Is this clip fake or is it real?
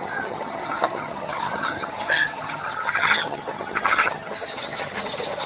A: fake